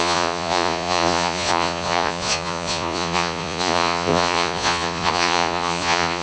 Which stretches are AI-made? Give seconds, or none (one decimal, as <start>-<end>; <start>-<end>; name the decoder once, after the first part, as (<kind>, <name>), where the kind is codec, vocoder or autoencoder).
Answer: 0.0-6.2 (vocoder, Vocos)